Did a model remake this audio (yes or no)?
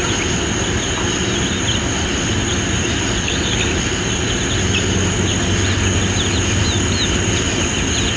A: no